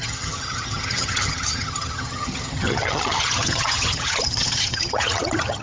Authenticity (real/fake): fake